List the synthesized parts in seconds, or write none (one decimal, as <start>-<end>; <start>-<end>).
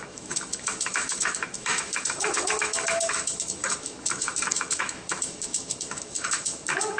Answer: 0.0-7.0